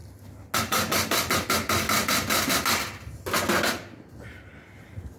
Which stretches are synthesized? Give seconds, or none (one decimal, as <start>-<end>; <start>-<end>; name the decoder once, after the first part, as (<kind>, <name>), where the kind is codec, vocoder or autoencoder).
none